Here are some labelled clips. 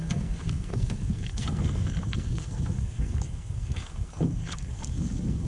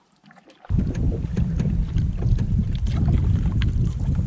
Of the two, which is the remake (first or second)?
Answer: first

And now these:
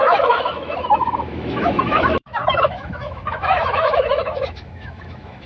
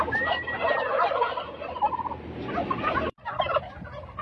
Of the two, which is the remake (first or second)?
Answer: first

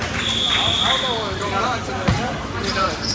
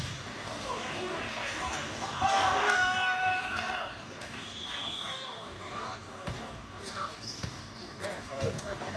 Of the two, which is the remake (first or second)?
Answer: second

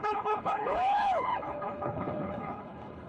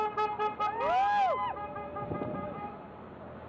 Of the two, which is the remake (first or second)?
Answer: first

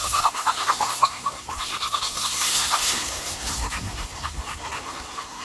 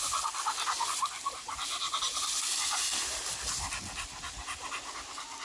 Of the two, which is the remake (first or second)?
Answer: first